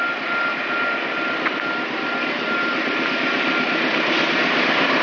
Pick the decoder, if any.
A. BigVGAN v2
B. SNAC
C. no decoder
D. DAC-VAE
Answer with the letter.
C